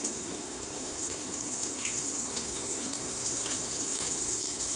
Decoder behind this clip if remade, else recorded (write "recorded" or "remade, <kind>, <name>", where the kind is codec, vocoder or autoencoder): remade, codec, SNAC